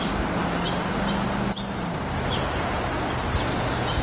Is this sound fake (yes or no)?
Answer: no